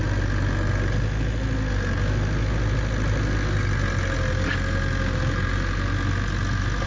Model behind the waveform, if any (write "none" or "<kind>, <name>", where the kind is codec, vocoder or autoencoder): none